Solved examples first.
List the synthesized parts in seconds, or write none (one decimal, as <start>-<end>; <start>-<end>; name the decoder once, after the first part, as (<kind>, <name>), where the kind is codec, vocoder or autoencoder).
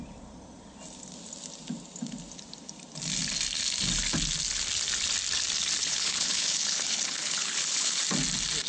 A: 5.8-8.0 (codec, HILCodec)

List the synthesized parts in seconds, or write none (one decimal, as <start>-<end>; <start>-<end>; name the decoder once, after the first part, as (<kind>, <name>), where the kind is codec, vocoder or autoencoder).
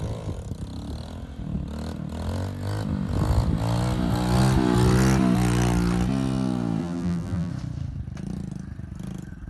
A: 6.8-7.5 (vocoder, BigVGAN v2)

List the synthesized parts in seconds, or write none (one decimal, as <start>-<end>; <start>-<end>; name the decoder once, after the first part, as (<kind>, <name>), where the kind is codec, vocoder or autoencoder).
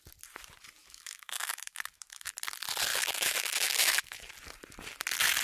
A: 0.8-2.3 (autoencoder, DAC-VAE); 2.9-4.3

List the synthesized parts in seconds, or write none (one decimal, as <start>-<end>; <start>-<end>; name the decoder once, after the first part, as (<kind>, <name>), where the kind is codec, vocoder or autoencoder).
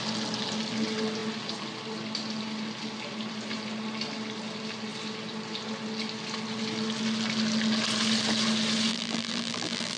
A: 8.9-10.0 (vocoder, BigVGAN v2)